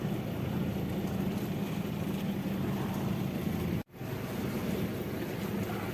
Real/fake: real